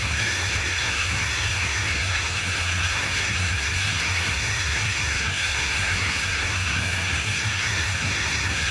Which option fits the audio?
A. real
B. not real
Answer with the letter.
B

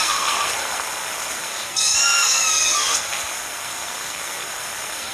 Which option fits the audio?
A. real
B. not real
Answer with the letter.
B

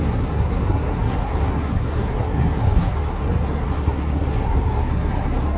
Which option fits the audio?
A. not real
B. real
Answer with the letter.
A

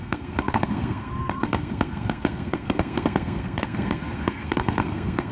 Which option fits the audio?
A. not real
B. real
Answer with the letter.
A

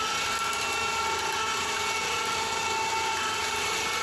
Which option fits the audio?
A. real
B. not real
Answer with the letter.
A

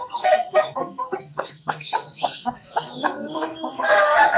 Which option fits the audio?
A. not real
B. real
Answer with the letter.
A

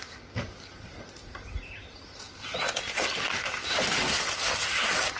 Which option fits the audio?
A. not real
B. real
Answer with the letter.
B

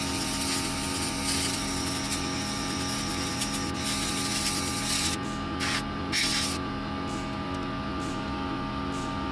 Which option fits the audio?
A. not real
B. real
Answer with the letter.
B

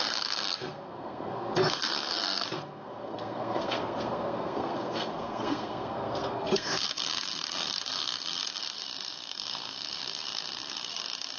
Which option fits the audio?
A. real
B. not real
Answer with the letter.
B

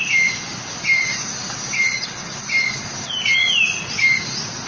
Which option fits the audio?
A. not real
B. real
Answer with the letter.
B